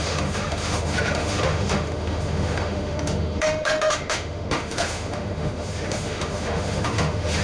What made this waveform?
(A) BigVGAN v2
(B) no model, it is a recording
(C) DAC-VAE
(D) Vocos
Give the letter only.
C